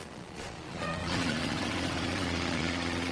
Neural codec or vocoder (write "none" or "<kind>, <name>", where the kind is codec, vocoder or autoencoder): vocoder, Vocos